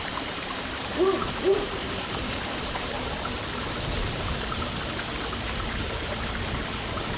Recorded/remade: remade